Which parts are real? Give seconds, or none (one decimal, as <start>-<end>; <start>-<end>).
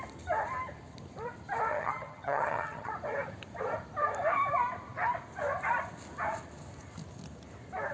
0.0-1.7; 2.9-7.9